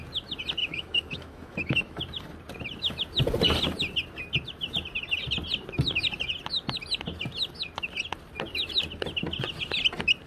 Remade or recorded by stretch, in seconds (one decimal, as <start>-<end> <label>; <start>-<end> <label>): 0.0-0.6 recorded; 0.6-2.0 remade; 2.0-10.3 recorded